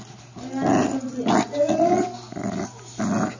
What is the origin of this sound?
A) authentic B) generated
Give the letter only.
A